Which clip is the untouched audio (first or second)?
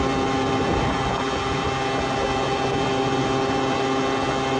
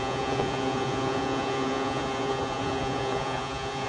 first